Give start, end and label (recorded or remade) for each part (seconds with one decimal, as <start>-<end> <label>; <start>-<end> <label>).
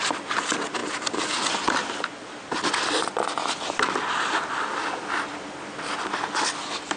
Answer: 0.0-7.0 recorded